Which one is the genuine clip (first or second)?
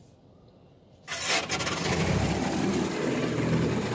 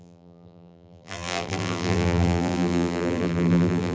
first